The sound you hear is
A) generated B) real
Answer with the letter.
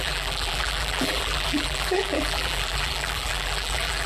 A